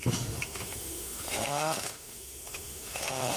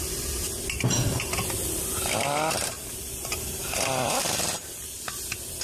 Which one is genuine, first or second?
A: second